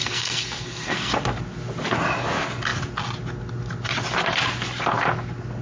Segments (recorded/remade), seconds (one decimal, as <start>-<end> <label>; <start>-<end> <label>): 0.0-1.1 remade; 1.1-5.6 recorded